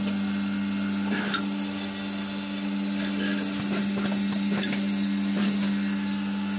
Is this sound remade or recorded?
recorded